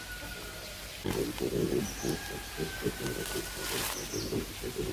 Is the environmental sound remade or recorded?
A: recorded